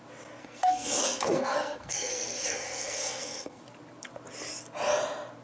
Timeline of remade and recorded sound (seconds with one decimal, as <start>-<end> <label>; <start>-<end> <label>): 0.0-0.4 recorded; 0.4-3.6 remade; 3.6-5.4 recorded